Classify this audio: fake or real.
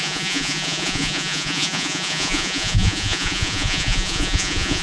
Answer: fake